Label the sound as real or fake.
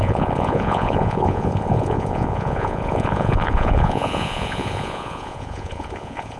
fake